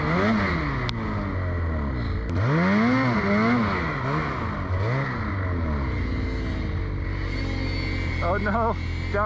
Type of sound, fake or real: real